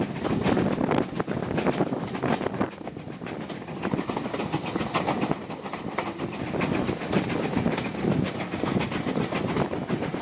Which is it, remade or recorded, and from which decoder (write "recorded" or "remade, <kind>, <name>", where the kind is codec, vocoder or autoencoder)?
recorded